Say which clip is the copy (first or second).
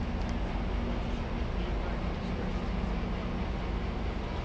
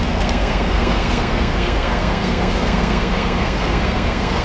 second